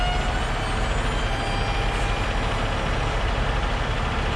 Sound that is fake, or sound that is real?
real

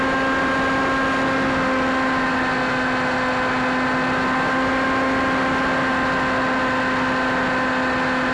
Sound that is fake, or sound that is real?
real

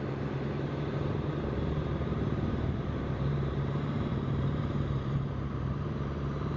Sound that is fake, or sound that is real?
fake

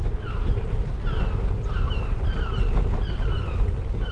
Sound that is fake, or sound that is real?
real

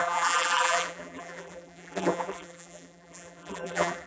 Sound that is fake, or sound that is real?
fake